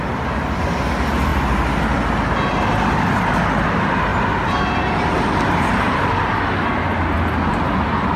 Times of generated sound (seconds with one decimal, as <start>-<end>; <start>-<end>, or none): none